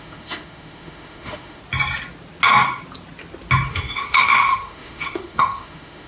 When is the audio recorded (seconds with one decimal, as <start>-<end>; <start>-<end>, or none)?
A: 1.6-3.7